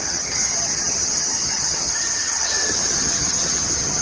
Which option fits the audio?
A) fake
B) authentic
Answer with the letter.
A